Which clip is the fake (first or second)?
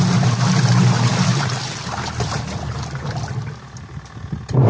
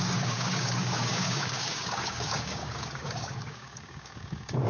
second